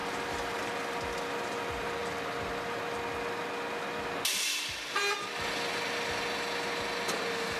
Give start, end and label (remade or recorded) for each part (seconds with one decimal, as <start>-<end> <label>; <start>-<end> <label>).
0.0-7.6 recorded